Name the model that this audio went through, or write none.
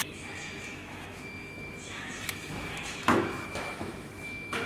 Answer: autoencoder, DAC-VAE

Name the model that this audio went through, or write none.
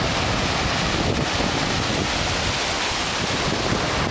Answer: none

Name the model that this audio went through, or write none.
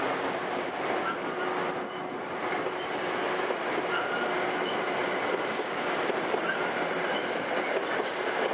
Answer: none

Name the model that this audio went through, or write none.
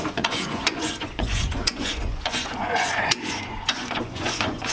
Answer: vocoder, Vocos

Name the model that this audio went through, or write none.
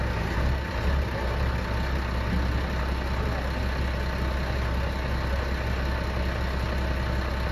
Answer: none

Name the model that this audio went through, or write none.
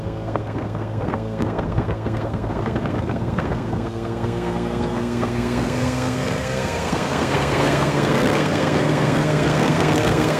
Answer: codec, SNAC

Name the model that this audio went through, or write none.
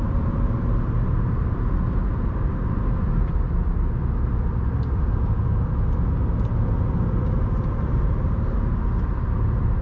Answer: none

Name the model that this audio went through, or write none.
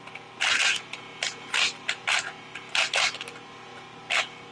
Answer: none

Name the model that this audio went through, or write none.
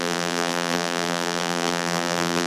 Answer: vocoder, BigVGAN v2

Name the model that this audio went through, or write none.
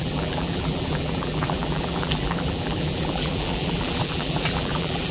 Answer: vocoder, BigVGAN v2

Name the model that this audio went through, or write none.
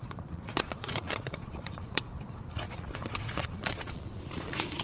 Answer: vocoder, Vocos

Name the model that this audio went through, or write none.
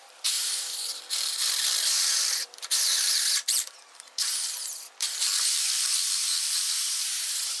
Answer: vocoder, BigVGAN v2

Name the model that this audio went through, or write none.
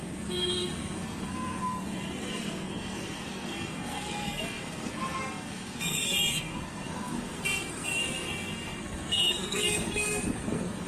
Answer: codec, SNAC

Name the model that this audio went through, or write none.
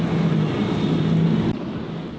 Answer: none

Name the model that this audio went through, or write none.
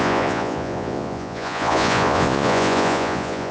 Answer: vocoder, Vocos